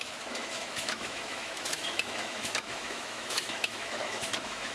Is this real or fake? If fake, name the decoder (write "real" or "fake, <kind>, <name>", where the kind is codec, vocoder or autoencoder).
fake, autoencoder, DAC-VAE